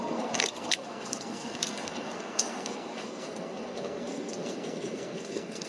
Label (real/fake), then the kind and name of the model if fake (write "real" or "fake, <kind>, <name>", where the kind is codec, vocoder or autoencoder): fake, codec, SNAC